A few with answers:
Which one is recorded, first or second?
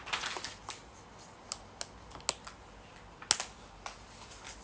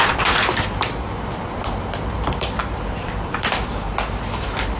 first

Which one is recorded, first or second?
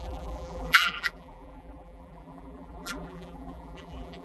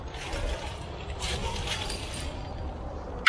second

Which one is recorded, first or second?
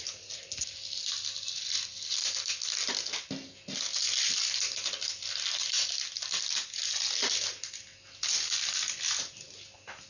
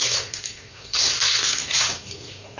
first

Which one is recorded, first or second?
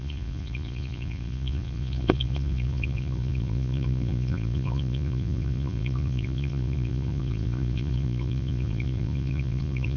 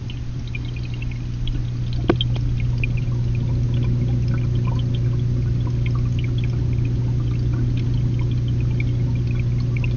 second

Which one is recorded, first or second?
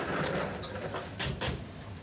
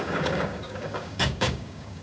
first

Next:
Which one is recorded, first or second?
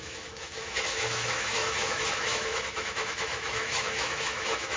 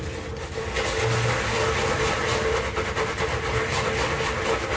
second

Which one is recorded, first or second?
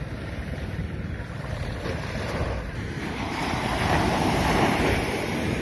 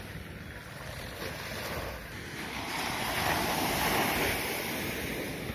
second